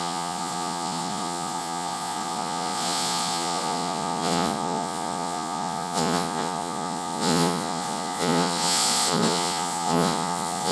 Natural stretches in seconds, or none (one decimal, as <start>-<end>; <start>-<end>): none